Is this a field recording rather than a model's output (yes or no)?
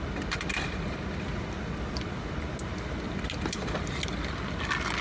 yes